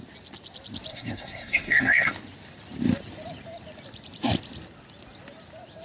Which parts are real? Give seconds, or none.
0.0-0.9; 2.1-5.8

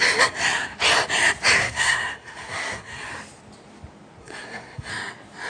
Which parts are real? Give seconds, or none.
0.0-1.6; 3.1-4.2; 4.9-5.5

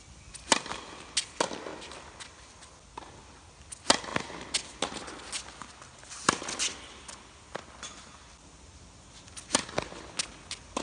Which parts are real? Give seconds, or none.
0.0-10.8

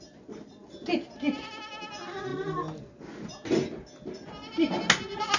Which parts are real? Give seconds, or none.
0.0-5.4

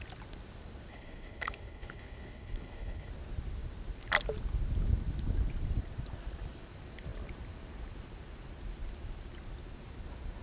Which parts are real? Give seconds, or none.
0.0-0.9; 3.1-10.4

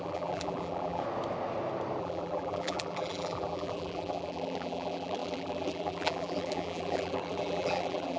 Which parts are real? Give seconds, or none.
1.0-2.0

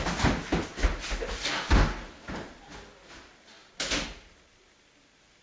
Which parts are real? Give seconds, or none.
0.0-5.4

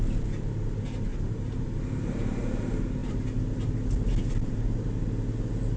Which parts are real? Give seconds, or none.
0.0-1.1; 2.6-5.8